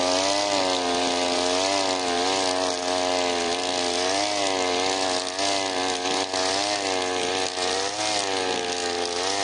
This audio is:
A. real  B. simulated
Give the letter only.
A